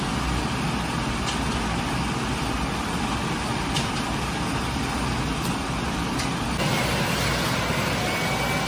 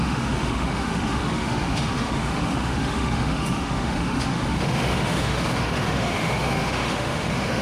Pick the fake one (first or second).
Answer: second